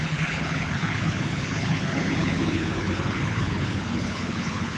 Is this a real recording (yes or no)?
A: no